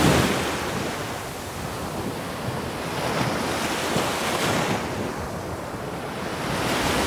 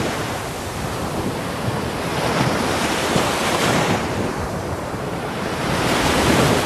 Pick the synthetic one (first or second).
second